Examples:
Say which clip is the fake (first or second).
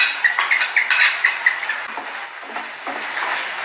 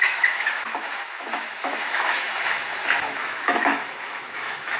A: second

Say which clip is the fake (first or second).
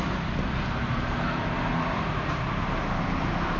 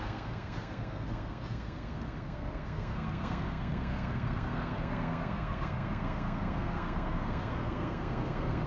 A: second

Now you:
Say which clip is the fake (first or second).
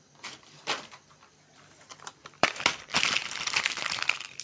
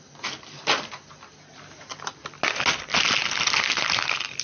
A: first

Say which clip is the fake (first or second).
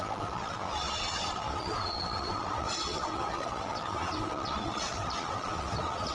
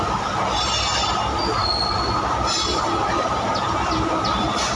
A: first